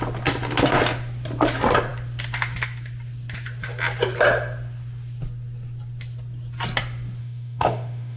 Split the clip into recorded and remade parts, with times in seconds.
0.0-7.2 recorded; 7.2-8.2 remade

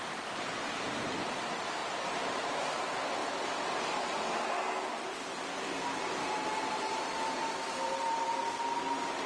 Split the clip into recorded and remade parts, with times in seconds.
0.0-3.2 recorded; 3.2-4.2 remade; 4.2-6.2 recorded; 6.2-8.6 remade; 8.6-9.3 recorded

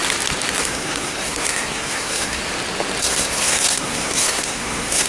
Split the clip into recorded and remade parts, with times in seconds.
0.0-0.6 recorded; 0.6-2.4 remade; 2.4-3.0 recorded; 3.0-5.1 remade

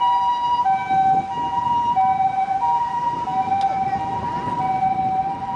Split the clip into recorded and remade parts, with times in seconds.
0.0-5.6 recorded

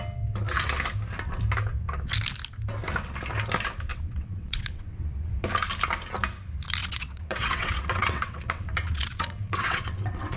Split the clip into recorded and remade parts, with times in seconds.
0.0-3.9 recorded; 3.9-5.3 remade; 5.3-6.8 recorded; 6.8-10.4 remade

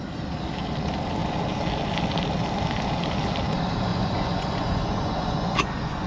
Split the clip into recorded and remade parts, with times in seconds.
0.0-3.9 recorded; 3.9-6.1 remade

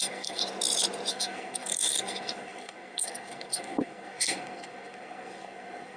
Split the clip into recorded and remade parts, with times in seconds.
0.0-0.4 remade; 0.4-1.1 recorded; 1.1-6.0 remade